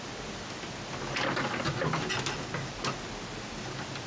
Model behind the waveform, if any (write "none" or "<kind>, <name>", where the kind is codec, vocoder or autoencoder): none